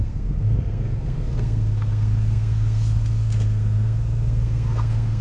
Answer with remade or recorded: remade